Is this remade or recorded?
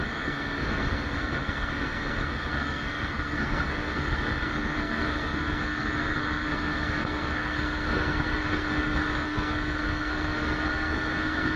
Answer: remade